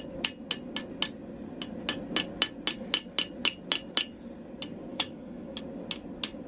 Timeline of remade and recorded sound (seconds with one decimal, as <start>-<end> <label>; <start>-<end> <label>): 0.0-4.9 recorded; 4.9-5.6 remade; 5.6-6.5 recorded